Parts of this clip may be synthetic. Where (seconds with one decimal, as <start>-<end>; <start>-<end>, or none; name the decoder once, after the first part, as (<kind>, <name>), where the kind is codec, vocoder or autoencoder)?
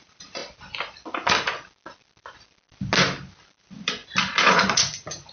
0.0-0.4 (vocoder, Vocos); 3.6-4.0; 4.5-5.3